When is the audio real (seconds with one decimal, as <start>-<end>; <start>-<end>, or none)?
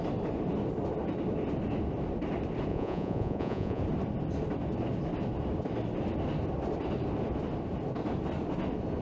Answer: 0.0-2.7; 3.8-9.0